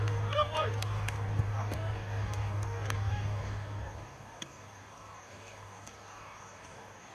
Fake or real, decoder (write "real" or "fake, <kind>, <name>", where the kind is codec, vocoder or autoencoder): fake, codec, DAC